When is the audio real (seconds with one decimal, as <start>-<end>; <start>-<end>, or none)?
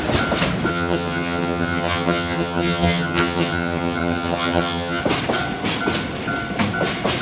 0.0-0.7; 5.0-7.2